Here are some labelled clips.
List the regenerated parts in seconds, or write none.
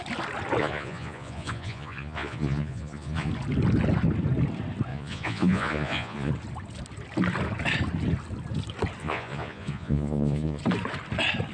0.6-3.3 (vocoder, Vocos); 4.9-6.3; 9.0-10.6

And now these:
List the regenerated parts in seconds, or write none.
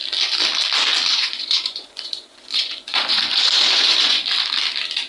1.1-4.2 (vocoder, Vocos)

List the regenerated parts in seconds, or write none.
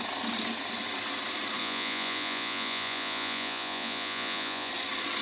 1.6-4.7 (vocoder, Vocos)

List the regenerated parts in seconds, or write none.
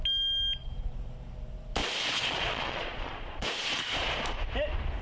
1.8-4.2 (vocoder, Vocos)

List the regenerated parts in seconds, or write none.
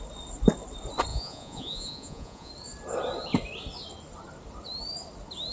1.1-2.5 (vocoder, Vocos)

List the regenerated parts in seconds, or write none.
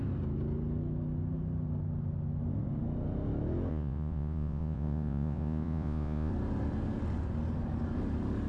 3.7-6.3 (vocoder, Vocos)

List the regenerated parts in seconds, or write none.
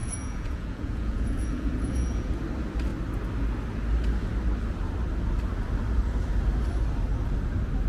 0.0-2.3 (vocoder, Vocos)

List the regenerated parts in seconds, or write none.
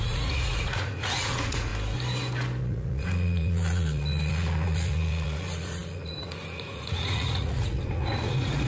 0.0-1.7 (vocoder, Vocos); 2.6-8.7